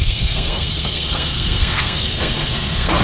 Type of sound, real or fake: fake